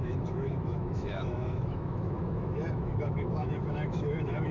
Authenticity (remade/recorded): remade